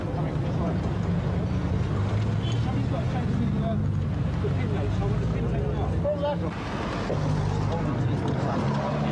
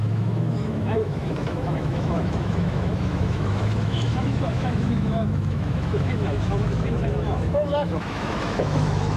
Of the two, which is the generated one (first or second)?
second